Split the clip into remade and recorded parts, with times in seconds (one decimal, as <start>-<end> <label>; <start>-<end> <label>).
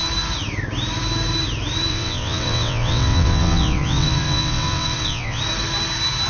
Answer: 0.0-1.9 recorded; 1.9-5.4 remade; 5.4-6.3 recorded